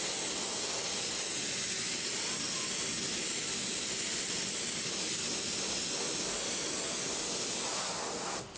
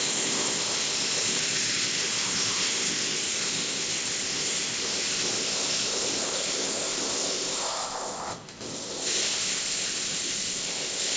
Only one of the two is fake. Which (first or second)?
second